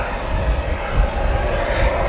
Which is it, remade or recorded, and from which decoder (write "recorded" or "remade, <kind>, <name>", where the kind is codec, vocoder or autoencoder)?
recorded